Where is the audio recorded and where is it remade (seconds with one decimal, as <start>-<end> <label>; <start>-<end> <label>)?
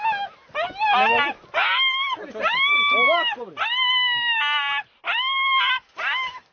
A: 0.0-6.5 recorded